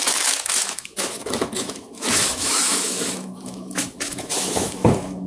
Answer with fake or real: fake